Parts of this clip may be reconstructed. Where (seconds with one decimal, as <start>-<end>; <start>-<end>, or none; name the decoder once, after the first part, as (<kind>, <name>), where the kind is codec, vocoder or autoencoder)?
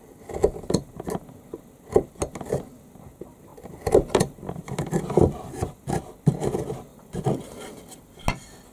3.5-4.6 (vocoder, BigVGAN v2); 6.9-8.2